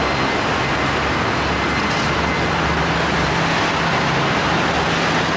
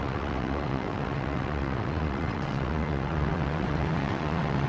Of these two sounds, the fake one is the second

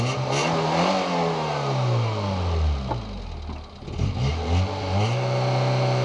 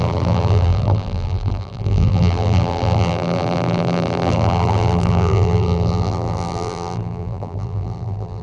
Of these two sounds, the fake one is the second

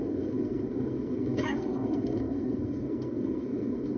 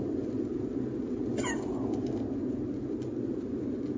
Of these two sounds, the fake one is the first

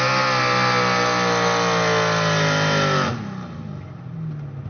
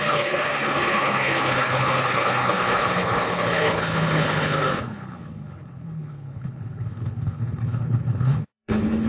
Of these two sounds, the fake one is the second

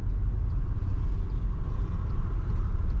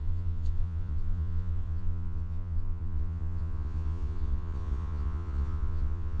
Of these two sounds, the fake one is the second